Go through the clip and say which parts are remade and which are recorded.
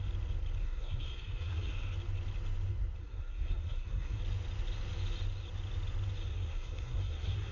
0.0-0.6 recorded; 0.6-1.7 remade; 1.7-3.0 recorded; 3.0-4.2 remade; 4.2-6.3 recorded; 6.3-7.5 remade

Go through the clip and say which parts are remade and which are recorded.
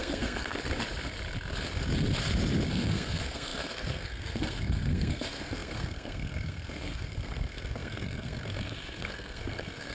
0.0-0.5 remade; 0.5-2.7 recorded; 2.7-9.9 remade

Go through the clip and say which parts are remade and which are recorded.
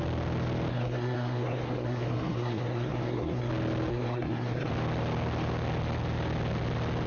0.0-0.7 recorded; 0.7-3.5 remade; 3.5-3.9 recorded; 3.9-4.7 remade; 4.7-7.1 recorded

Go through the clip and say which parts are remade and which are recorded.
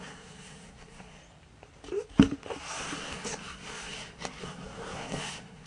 0.0-1.2 remade; 1.2-2.8 recorded; 2.8-5.7 remade